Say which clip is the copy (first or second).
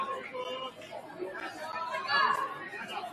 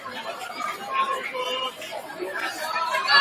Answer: second